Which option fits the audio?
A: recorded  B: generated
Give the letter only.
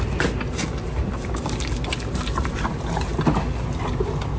A